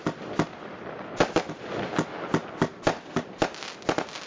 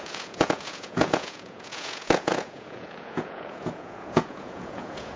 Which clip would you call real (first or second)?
first